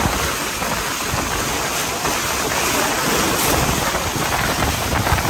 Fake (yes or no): no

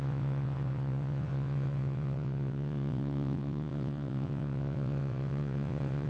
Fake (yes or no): yes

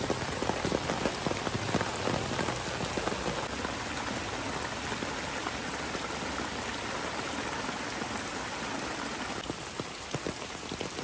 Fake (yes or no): no